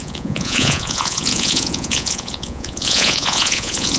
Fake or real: fake